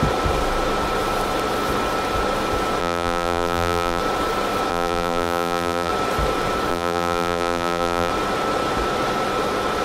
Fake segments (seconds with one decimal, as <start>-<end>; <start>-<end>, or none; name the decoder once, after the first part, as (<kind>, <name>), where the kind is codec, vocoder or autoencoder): 2.8-4.0 (vocoder, BigVGAN v2); 4.7-5.9; 6.7-8.1